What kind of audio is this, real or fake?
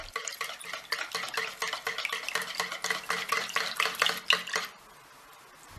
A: real